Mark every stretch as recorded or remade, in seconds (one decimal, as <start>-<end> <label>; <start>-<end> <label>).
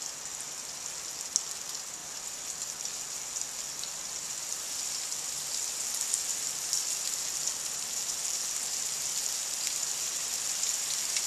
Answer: 0.0-11.3 recorded